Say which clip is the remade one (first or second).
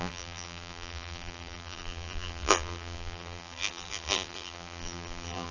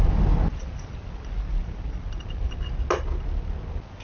first